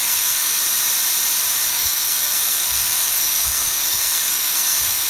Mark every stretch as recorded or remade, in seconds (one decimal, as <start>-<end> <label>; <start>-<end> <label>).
0.0-0.6 remade; 0.6-1.7 recorded; 1.7-5.1 remade